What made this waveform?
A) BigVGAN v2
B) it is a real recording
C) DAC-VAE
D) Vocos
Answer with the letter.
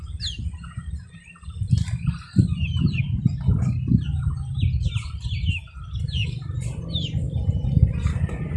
A